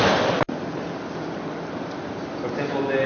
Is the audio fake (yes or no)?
no